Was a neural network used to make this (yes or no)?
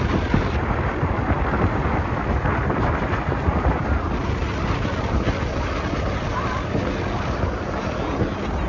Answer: no